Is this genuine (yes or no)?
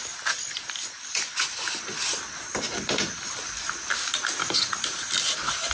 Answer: yes